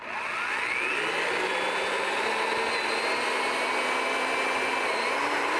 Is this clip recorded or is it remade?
recorded